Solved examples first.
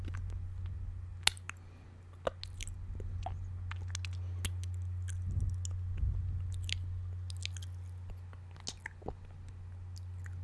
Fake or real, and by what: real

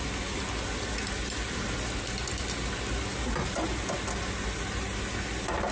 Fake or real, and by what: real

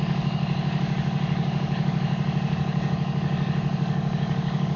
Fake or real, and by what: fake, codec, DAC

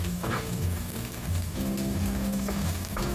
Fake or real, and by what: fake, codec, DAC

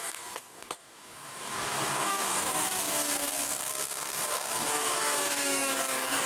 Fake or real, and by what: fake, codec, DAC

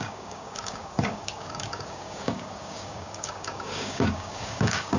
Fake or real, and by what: fake, codec, DAC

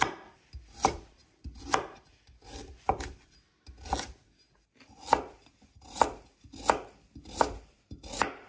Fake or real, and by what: real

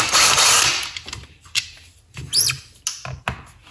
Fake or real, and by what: real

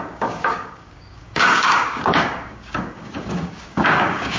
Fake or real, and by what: fake, codec, DAC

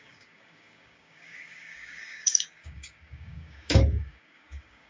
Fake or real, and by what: fake, codec, DAC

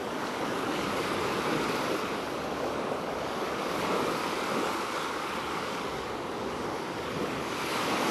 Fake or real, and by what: fake, codec, DAC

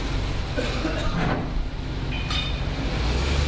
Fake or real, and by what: real